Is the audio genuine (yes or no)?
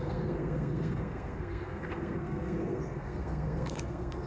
no